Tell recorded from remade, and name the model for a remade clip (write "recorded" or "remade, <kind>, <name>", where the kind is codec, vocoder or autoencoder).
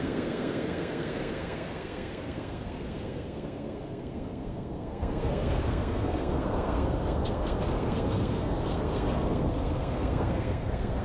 remade, codec, SNAC